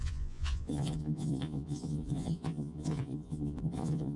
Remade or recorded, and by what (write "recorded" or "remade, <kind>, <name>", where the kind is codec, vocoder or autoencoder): remade, vocoder, Vocos